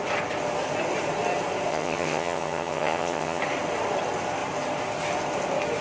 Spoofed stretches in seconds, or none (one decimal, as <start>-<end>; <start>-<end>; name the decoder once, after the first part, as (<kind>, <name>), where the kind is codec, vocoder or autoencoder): 1.7-3.4 (vocoder, HiFi-GAN)